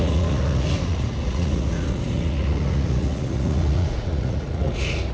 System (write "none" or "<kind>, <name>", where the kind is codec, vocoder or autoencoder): vocoder, Vocos